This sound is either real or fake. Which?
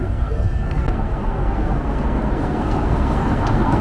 fake